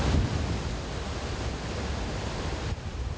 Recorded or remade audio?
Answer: recorded